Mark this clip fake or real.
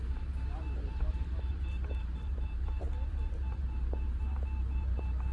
fake